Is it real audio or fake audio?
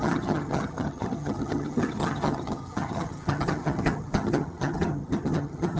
fake